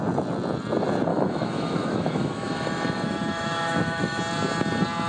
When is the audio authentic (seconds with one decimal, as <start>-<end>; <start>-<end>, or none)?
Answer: 0.0-1.1; 4.2-5.1